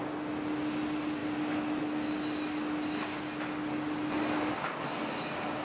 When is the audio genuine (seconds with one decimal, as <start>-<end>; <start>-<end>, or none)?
0.0-5.6